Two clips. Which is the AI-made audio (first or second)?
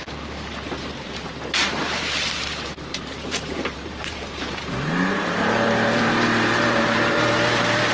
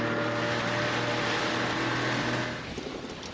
first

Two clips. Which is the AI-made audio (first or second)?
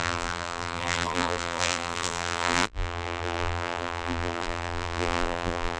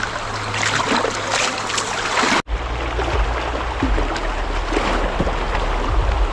first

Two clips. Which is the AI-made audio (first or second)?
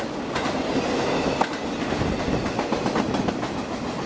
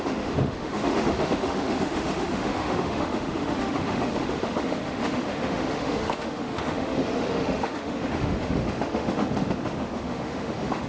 second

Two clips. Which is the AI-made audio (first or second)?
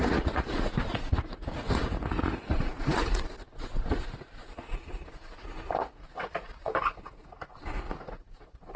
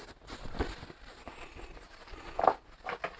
first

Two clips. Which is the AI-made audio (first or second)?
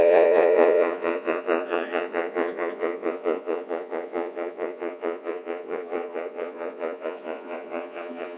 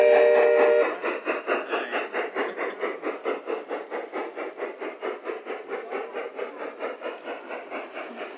first